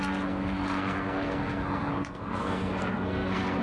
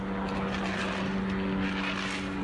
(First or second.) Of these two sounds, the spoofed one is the first